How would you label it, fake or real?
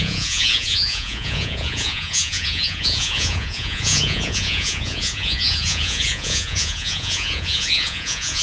fake